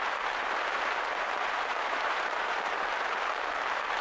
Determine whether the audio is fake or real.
fake